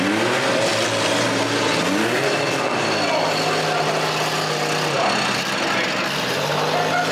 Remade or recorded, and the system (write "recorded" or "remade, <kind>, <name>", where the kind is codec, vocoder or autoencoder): recorded